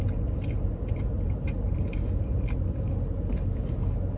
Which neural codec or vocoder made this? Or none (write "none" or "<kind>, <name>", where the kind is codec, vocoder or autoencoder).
none